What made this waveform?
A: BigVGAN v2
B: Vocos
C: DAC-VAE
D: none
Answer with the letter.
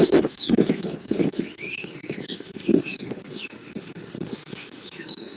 C